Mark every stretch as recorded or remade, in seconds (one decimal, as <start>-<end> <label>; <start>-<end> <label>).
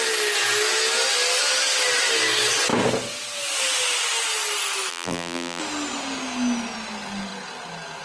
0.0-4.9 recorded; 4.9-5.6 remade; 5.6-8.0 recorded